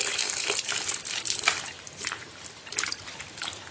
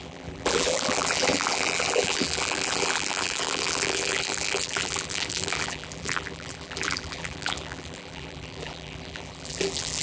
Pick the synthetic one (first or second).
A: second